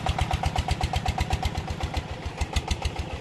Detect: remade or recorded recorded